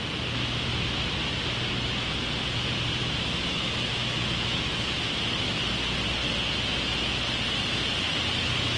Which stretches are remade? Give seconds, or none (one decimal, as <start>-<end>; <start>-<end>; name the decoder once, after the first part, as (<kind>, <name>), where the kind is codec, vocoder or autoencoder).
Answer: 3.0-5.6 (autoencoder, DAC-VAE)